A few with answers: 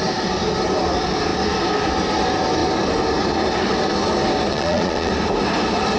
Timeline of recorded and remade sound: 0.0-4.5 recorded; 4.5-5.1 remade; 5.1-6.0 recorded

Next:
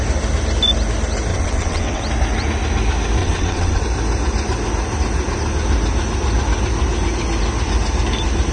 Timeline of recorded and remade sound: 0.0-1.3 recorded; 1.3-2.0 remade; 2.0-3.2 recorded; 3.2-3.8 remade; 3.8-8.5 recorded

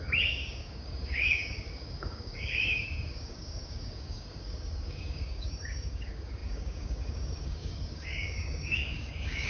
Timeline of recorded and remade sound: 0.0-9.5 remade

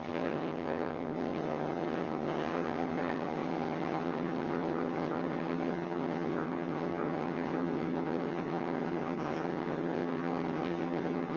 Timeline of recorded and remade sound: 0.0-11.4 remade

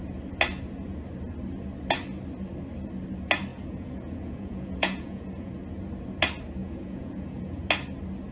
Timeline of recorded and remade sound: 0.0-3.5 recorded; 3.5-5.5 remade; 5.5-6.6 recorded; 6.6-7.6 remade; 7.6-8.3 recorded